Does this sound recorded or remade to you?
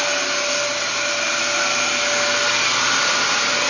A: recorded